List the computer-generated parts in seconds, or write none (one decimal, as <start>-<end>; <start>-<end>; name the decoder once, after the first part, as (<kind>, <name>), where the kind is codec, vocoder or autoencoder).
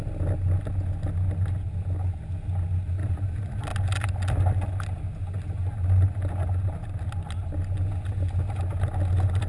none